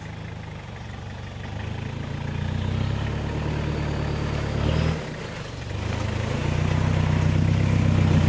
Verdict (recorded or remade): recorded